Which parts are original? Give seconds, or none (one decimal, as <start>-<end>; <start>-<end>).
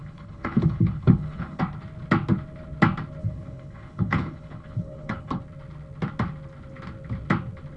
1.6-3.2; 5.4-7.8